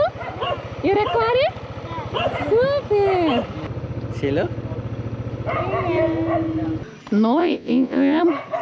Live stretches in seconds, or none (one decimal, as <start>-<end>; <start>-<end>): 0.0-7.4; 8.2-8.6